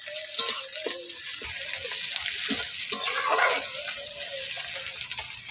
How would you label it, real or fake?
real